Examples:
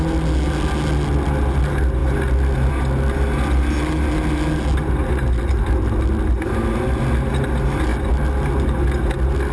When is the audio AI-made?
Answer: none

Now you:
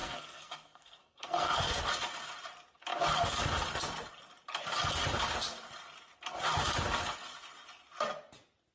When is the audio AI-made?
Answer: 0.0-1.8

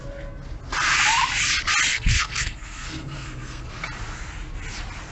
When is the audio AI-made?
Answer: 1.9-3.7

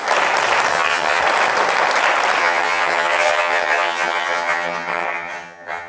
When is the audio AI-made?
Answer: 0.7-1.2; 2.4-5.9